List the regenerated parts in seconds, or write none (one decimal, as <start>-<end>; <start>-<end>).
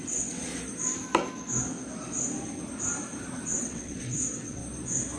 0.0-0.5; 3.6-4.6